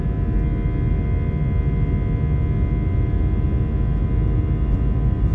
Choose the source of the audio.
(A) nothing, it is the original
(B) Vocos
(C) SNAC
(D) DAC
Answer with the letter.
A